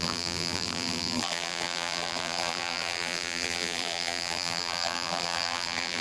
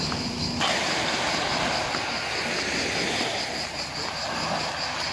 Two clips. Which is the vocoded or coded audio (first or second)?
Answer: first